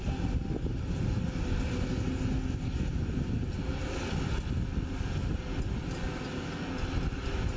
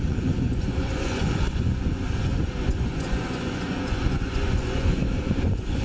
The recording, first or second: first